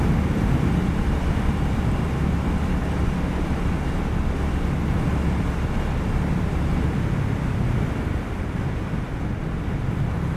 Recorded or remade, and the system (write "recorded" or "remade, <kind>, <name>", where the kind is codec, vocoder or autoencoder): recorded